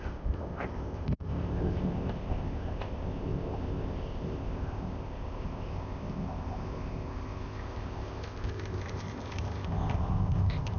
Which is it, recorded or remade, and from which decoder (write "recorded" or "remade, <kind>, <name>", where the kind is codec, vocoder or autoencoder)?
remade, codec, ZipCodec